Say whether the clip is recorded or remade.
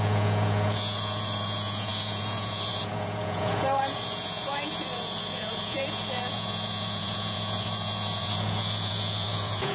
remade